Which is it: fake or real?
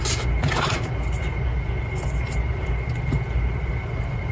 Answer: real